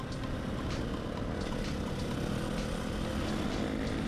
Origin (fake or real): real